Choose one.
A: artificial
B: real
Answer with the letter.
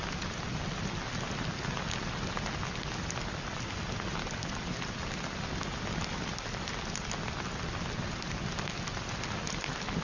B